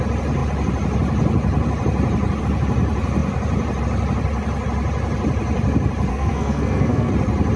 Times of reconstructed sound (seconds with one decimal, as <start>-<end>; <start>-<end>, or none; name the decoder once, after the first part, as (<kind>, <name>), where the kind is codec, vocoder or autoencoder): 6.1-7.1 (codec, SNAC)